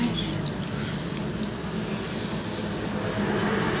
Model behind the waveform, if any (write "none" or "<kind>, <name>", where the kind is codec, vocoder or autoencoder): none